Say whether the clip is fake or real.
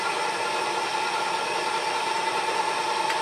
real